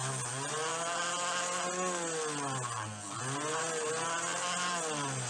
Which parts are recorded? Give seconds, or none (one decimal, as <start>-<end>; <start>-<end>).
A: 0.0-5.3